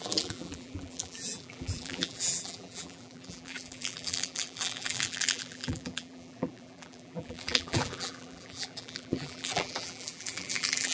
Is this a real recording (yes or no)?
no